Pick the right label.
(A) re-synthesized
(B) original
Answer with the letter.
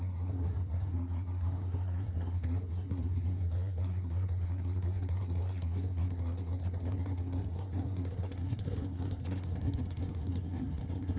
A